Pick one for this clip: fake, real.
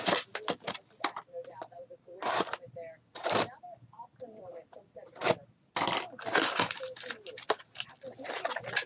real